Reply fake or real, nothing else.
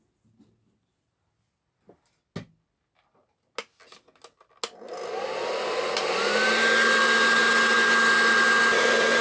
real